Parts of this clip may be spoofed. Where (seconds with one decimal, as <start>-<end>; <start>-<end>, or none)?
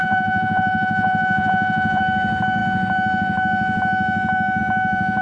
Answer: 0.0-2.0